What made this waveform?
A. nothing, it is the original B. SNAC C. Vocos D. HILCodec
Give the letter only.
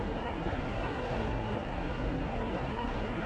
B